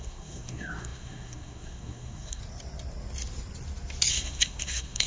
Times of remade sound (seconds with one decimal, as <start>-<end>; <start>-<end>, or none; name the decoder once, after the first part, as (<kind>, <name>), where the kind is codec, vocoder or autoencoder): 0.0-2.4 (codec, SNAC); 4.1-5.1